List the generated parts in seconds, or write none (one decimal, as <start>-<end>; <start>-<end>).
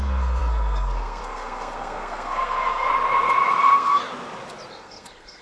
0.0-2.9; 3.6-4.0; 4.7-5.4